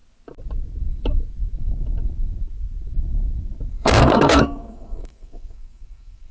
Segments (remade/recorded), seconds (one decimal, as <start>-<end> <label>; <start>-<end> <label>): 0.0-3.7 recorded; 3.7-6.3 remade